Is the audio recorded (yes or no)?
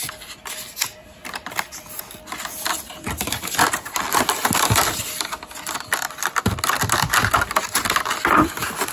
yes